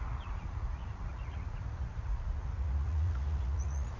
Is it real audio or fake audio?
fake